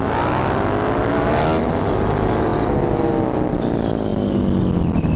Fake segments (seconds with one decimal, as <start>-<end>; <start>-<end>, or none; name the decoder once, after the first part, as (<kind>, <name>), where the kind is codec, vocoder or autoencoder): none